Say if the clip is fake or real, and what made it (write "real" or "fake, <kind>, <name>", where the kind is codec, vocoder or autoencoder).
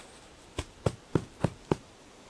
fake, vocoder, BigVGAN v2